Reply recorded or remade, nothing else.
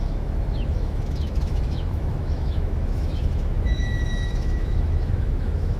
remade